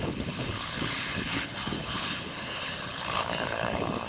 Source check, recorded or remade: remade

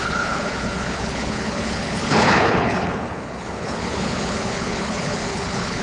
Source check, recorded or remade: remade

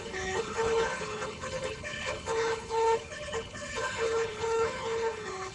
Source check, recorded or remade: remade